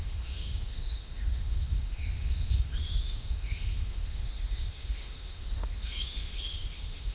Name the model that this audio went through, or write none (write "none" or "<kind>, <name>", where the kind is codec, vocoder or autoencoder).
autoencoder, DAC-VAE